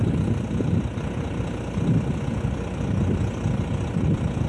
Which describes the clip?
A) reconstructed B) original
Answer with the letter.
B